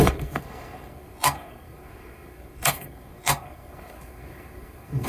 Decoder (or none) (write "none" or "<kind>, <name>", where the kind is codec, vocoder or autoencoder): codec, SNAC